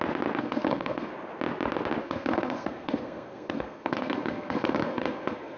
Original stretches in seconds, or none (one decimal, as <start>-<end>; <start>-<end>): 0.0-0.4; 1.1-2.0